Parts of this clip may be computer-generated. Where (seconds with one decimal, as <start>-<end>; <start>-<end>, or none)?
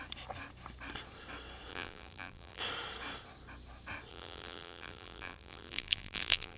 1.7-2.6; 4.1-6.6